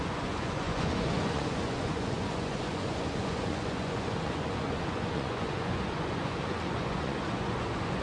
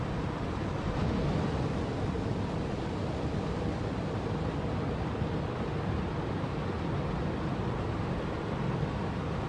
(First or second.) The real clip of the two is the second